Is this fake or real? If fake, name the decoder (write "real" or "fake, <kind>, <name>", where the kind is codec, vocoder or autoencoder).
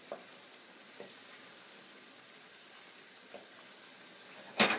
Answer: real